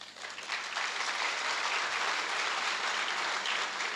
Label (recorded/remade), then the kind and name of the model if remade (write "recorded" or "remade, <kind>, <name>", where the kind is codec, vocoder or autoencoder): recorded